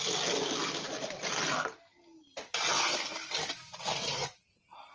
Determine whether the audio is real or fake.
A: real